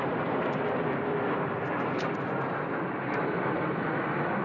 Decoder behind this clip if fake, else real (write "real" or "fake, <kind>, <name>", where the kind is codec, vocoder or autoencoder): real